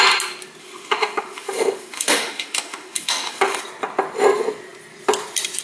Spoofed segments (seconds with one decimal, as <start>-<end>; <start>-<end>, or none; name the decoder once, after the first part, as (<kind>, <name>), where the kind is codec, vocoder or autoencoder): 0.6-3.6 (autoencoder, DAC-VAE)